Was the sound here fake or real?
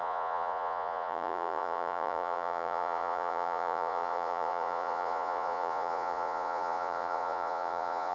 fake